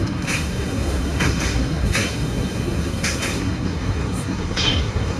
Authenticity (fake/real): fake